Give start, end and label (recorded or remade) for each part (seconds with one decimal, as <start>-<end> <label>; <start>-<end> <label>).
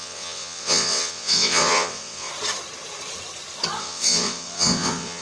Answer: 0.0-2.3 remade; 2.3-3.8 recorded; 3.8-5.2 remade